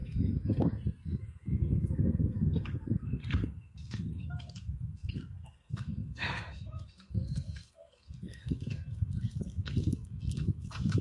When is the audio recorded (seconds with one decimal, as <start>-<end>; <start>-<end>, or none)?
none